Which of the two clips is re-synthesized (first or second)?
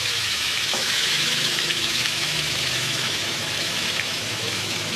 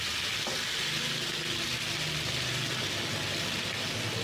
first